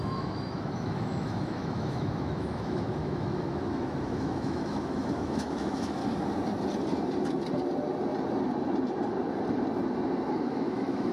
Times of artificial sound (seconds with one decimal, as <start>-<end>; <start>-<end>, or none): 0.0-6.0; 10.3-11.1